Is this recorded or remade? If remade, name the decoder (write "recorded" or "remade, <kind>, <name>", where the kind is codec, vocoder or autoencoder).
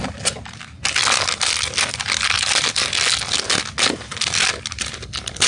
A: recorded